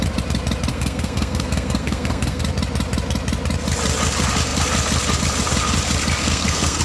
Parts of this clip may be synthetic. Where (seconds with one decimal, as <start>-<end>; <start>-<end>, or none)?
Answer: 0.7-2.4; 6.2-6.8